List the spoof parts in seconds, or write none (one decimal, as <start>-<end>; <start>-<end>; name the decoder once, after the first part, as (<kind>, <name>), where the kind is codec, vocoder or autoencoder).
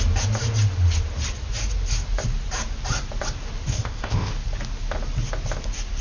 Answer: 3.7-4.3 (codec, ZipCodec)